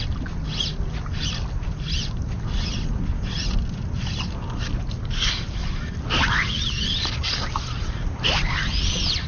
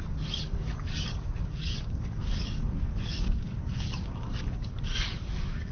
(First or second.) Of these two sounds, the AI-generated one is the second